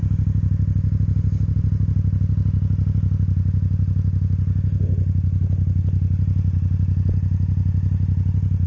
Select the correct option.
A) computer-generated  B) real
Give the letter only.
B